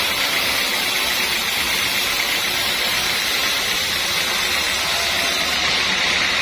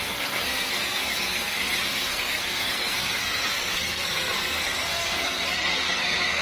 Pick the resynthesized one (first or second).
second